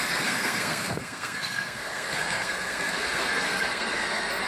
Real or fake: fake